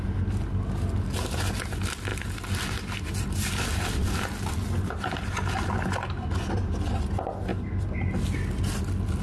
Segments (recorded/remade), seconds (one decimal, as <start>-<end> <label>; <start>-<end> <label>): 0.0-9.2 recorded